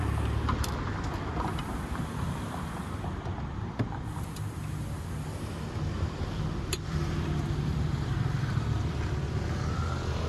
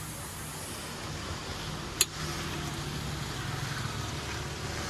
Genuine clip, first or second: second